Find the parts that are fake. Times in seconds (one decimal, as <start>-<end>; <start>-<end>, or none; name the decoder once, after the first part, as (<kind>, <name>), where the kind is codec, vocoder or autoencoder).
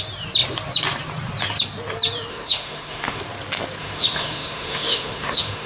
2.3-3.2 (autoencoder, DAC-VAE); 3.8-5.7